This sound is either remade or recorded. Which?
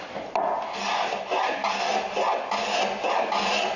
recorded